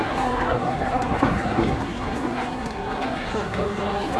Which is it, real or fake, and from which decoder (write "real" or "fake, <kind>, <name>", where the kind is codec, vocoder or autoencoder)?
fake, codec, SNAC